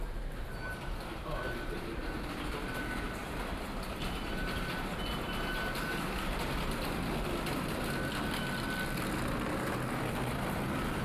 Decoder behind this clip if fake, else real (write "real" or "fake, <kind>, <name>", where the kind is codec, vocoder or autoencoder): real